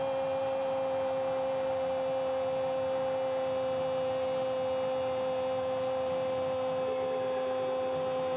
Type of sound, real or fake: real